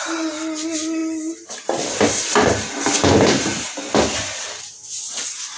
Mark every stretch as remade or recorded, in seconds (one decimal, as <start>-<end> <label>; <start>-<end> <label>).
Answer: 0.0-5.6 recorded

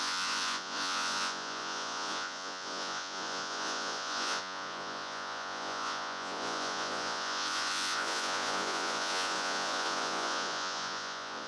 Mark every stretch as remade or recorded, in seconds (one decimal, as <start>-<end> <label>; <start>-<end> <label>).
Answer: 0.0-11.5 remade

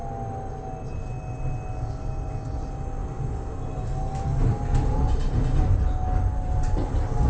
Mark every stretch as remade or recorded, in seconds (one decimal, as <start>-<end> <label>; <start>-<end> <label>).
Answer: 0.0-7.3 recorded